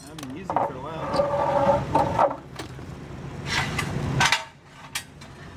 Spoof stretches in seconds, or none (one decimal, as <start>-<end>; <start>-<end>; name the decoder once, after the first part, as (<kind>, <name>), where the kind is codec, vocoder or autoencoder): 1.3-2.9 (vocoder, BigVGAN v2)